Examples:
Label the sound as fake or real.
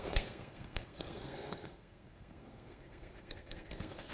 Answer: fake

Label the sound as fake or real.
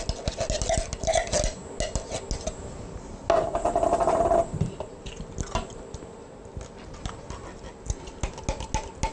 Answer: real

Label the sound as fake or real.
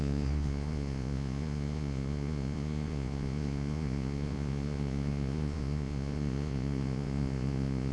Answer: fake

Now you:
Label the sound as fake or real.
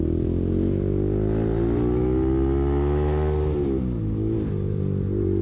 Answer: real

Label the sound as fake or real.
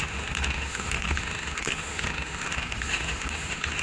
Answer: fake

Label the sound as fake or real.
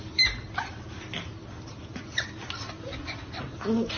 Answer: real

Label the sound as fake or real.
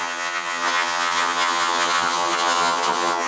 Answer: fake